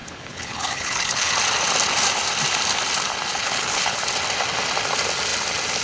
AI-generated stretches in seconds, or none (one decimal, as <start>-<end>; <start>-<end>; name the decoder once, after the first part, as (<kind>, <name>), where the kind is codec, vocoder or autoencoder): 0.0-1.3 (codec, HILCodec); 3.3-4.0